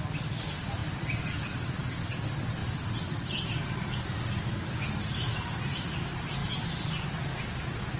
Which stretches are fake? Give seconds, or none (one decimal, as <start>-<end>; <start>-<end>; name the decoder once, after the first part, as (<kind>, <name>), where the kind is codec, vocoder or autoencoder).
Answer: none